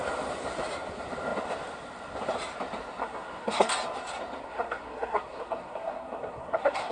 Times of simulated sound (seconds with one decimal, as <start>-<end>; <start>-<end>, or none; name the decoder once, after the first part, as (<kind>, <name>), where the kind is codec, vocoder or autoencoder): 3.0-3.7 (codec, SNAC); 4.4-6.9